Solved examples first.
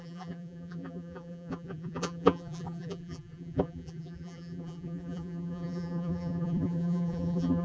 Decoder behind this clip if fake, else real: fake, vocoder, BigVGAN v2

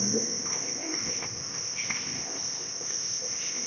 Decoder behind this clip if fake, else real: fake, codec, ZipCodec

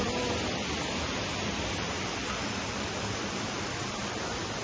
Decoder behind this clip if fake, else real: fake, vocoder, BigVGAN v2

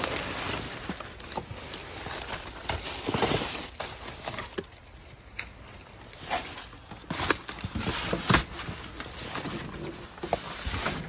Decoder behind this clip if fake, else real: real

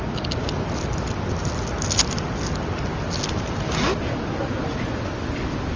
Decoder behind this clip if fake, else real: real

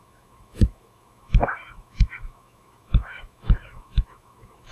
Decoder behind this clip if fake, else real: fake, autoencoder, DAC-VAE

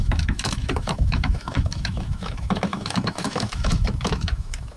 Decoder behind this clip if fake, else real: fake, autoencoder, DAC-VAE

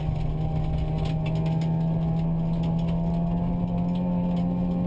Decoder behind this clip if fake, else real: real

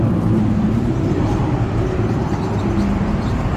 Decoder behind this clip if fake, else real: fake, vocoder, BigVGAN v2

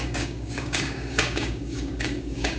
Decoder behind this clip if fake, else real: fake, codec, DAC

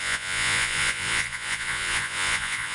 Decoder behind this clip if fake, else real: fake, vocoder, Vocos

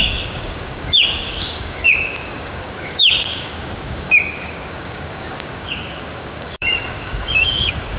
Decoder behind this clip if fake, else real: fake, codec, DAC